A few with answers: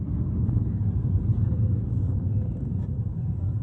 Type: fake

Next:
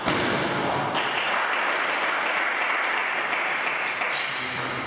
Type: real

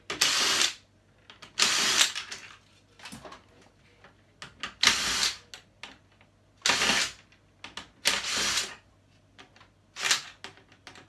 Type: real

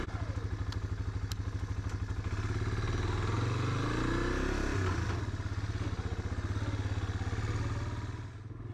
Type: real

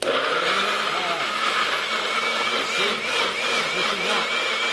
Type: real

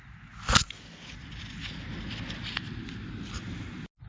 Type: real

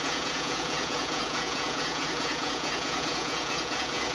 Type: fake